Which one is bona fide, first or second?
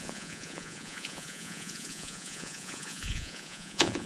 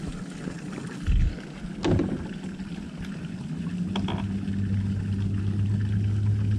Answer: second